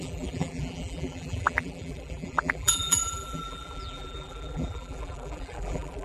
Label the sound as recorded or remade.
remade